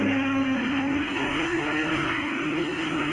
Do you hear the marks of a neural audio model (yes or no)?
yes